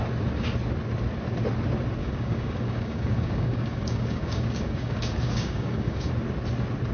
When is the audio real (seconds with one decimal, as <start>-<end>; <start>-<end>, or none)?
0.0-2.0; 6.1-6.9

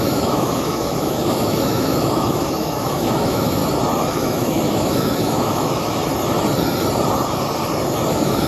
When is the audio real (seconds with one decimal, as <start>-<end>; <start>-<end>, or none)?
3.6-4.1; 6.0-8.1

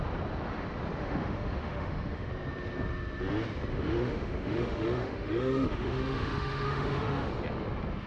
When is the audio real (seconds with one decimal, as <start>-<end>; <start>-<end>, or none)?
0.0-1.0; 2.3-3.7; 7.3-8.1

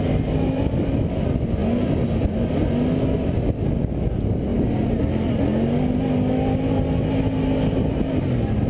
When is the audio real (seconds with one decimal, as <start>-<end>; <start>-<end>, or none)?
0.0-8.7

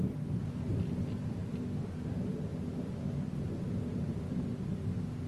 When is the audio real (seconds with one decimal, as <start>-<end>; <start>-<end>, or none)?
0.0-1.4; 2.1-2.5; 3.5-3.9

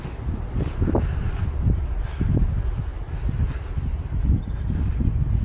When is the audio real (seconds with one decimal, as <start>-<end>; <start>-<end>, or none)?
0.0-5.4